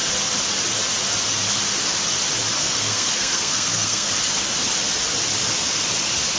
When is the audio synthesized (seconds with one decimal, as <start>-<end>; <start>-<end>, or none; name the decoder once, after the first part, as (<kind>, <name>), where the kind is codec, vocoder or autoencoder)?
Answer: 2.6-4.1 (codec, SNAC)